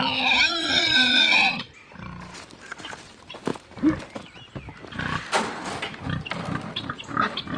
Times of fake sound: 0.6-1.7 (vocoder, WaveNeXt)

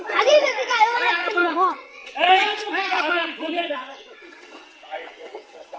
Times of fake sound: 0.0-5.8 (vocoder, WaveNeXt)

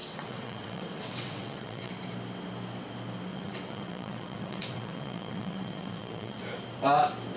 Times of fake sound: 0.0-1.9 (vocoder, WaveNeXt); 3.3-6.4

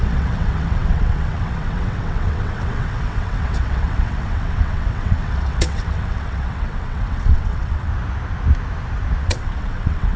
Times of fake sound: 0.0-7.9 (vocoder, WaveNeXt); 9.2-10.2

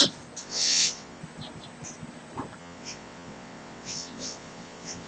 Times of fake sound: 0.4-1.2 (vocoder, WaveNeXt); 2.6-5.1